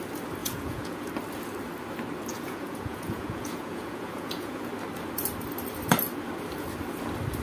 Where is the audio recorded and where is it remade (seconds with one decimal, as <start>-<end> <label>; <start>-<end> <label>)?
0.0-0.4 recorded; 0.4-1.1 remade; 1.1-2.3 recorded; 2.3-4.7 remade; 4.7-7.4 recorded